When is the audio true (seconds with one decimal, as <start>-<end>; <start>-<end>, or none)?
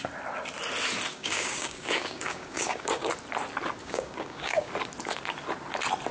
0.0-1.1; 3.1-3.8; 4.7-6.1